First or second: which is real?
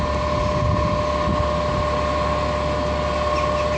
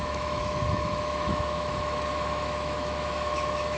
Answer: first